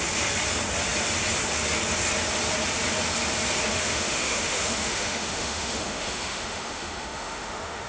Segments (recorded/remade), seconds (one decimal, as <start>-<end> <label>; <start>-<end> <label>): 0.0-3.7 recorded; 3.7-7.9 remade